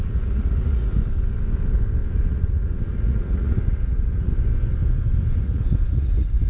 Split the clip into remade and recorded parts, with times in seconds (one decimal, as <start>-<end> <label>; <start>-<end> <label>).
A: 0.0-1.0 remade; 1.0-2.1 recorded; 2.1-4.3 remade; 4.3-5.4 recorded; 5.4-6.5 remade